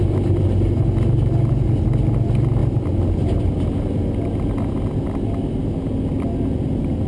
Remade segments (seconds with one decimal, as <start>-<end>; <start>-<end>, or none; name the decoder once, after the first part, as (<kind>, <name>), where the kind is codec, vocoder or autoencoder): none